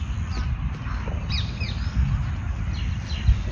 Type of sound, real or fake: real